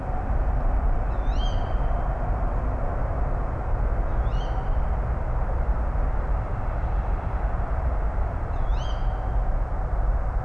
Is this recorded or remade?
recorded